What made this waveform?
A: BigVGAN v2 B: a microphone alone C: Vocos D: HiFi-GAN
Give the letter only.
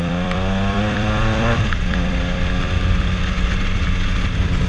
A